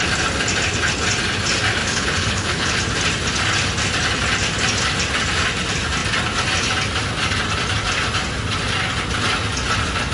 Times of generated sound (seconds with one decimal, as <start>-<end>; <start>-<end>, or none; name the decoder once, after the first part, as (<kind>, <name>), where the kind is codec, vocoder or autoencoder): 1.8-2.8 (codec, HILCodec)